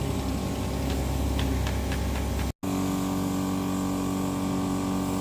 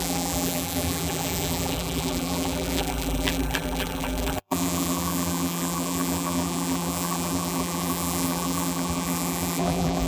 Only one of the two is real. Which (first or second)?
first